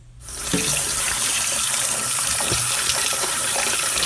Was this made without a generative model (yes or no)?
no